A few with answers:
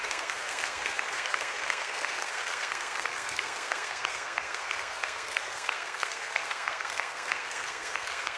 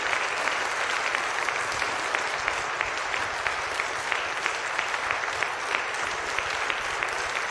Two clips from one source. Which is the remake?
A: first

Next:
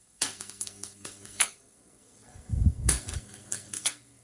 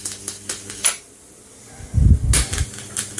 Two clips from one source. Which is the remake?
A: first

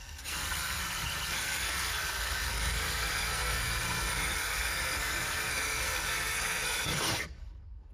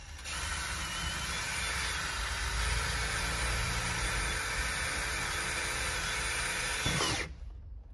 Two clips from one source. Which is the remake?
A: first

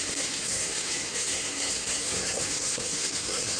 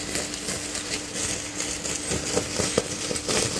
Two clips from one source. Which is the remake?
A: first